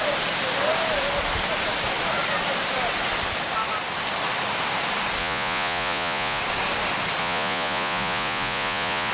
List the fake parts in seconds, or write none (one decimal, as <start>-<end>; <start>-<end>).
5.2-6.4; 7.2-9.1